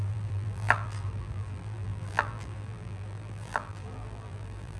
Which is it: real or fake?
fake